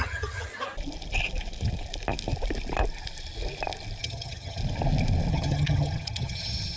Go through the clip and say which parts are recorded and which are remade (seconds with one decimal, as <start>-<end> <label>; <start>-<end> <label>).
0.0-0.5 remade; 0.5-4.0 recorded; 4.0-4.6 remade; 4.6-5.3 recorded; 5.3-6.8 remade